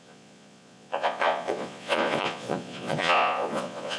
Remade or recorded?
remade